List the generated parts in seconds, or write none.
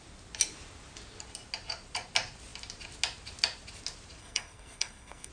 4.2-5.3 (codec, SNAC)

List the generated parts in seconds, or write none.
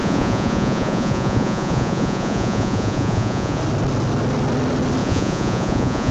0.0-3.6 (vocoder, Vocos); 5.0-6.1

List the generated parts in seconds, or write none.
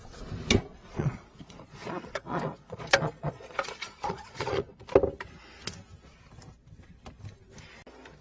0.7-4.8 (vocoder, Vocos)